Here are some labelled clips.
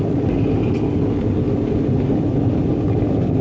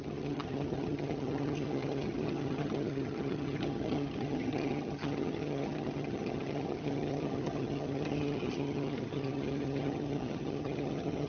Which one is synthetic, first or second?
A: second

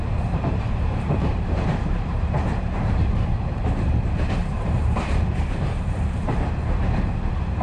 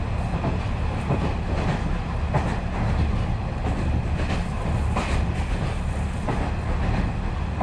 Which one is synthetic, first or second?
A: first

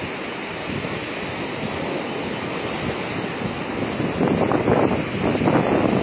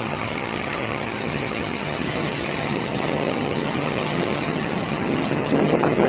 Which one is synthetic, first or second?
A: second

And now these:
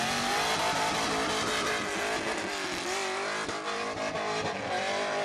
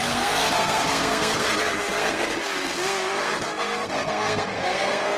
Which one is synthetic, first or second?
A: second